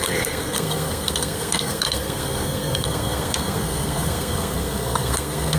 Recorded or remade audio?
remade